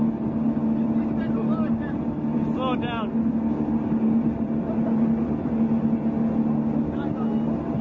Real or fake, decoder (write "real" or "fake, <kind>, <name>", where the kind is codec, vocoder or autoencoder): real